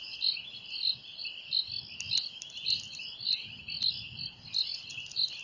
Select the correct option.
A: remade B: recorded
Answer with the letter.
B